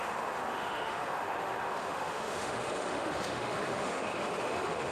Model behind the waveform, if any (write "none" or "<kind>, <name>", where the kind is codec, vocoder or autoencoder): autoencoder, DAC-VAE